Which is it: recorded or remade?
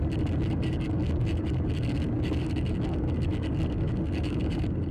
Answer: remade